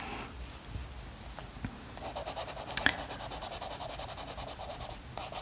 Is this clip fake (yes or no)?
no